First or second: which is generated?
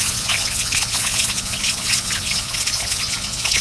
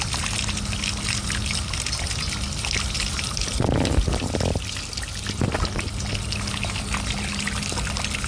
first